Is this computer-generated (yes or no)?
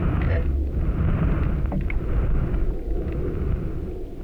no